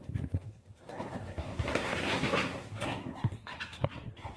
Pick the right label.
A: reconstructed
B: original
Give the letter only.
A